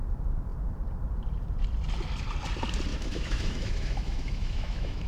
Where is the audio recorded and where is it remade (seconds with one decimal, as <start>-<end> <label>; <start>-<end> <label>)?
0.0-2.9 recorded; 2.9-5.1 remade